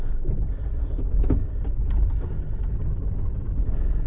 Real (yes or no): yes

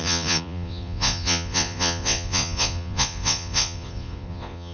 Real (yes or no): no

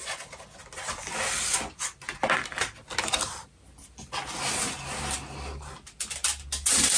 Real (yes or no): yes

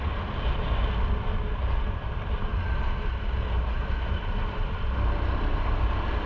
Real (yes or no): yes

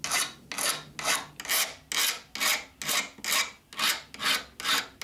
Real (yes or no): yes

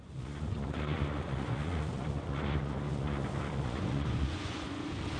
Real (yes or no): no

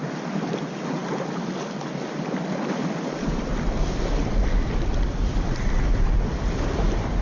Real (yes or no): yes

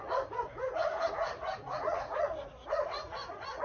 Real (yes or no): no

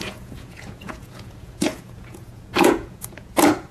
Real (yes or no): no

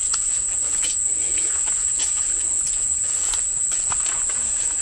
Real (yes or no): no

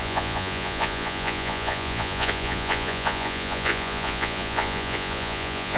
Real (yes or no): no